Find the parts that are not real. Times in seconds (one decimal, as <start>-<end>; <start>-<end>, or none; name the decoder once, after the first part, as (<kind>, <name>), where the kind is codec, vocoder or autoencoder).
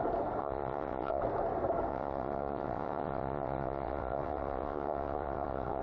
0.4-1.2 (vocoder, WaveNeXt); 1.9-5.8